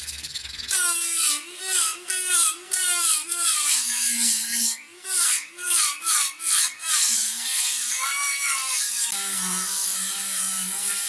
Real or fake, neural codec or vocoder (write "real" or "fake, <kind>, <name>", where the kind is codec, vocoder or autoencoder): fake, codec, SNAC